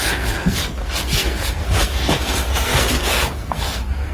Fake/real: fake